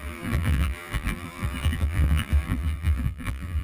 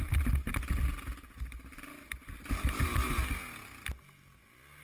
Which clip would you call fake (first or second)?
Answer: first